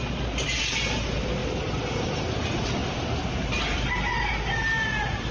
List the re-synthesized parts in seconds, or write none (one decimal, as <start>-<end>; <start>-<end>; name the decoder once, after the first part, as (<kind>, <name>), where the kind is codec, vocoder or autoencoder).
none

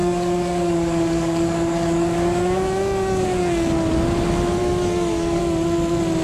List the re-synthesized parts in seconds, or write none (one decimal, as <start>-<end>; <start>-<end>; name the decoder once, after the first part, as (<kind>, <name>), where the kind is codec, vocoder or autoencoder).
0.0-3.7 (codec, DAC); 4.6-5.4

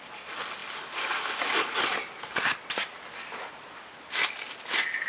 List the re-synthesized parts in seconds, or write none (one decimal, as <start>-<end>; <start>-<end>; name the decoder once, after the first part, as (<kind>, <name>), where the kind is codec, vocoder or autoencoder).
none

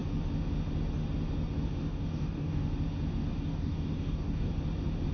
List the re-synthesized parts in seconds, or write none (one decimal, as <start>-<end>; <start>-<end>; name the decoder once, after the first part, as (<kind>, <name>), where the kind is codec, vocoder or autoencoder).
1.8-2.7 (codec, DAC); 3.3-4.5

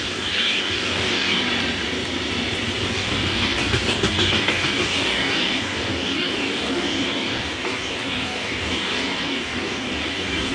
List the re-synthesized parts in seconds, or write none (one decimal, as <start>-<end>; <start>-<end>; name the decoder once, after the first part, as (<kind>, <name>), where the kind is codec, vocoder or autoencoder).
0.0-1.4 (codec, DAC); 2.9-10.5

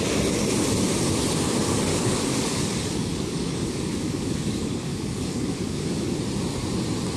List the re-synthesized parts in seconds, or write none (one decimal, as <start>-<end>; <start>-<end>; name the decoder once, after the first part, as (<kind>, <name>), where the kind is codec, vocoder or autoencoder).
1.9-6.2 (codec, DAC)

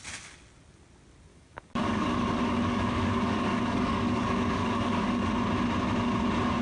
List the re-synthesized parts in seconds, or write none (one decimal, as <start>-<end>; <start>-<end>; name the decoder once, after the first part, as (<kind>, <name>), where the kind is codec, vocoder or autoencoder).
1.3-5.3 (codec, DAC)

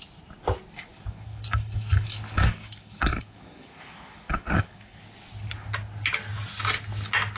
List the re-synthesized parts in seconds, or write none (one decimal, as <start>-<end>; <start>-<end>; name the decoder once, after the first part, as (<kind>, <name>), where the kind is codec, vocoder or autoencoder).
0.9-5.0 (codec, DAC)